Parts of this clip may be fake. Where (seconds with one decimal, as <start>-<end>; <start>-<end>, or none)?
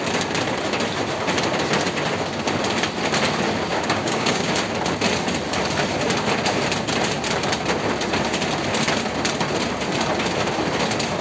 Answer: 3.7-4.5